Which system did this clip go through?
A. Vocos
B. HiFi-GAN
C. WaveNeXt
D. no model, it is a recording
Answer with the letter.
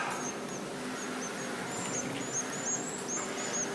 D